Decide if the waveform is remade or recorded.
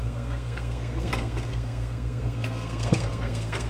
remade